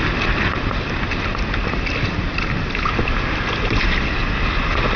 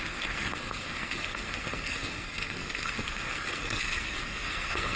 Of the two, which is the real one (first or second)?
first